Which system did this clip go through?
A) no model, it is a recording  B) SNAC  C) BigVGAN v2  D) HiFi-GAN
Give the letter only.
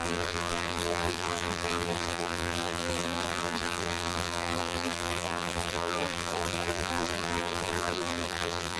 C